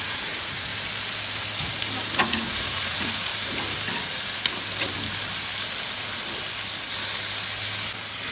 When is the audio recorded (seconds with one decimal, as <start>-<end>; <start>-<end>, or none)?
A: 0.7-2.2; 3.3-8.3